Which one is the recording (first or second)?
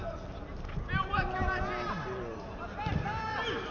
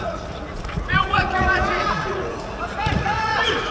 first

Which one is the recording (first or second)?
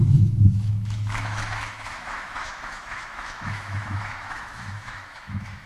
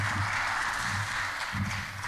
second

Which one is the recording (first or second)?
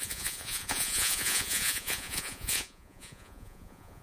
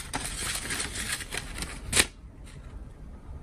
second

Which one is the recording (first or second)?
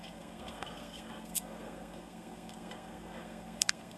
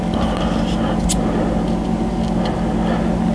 second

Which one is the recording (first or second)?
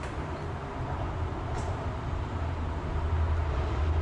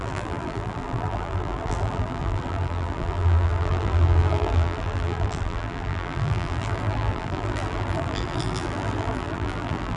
first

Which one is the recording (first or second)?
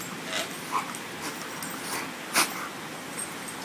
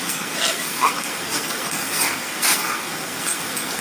first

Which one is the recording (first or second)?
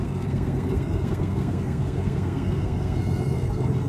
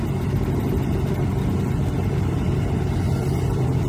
second